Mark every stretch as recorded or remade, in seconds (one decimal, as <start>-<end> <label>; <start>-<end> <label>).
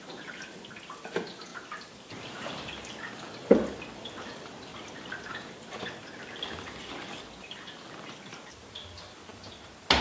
0.0-1.5 recorded; 1.5-2.5 remade; 2.5-10.0 recorded